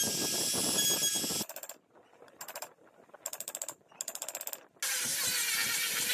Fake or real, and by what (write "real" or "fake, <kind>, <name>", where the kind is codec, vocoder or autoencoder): real